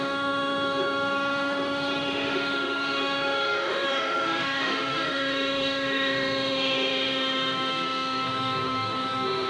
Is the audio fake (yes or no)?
yes